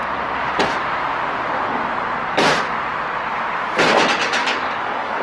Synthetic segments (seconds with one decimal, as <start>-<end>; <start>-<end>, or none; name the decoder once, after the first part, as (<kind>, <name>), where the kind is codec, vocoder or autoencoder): 4.4-5.2 (codec, DAC)